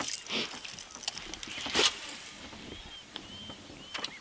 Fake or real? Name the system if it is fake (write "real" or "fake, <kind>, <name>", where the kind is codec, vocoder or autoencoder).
real